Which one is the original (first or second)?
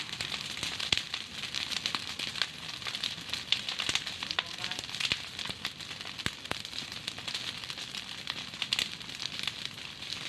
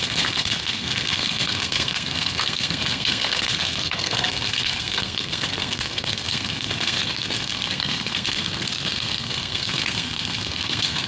first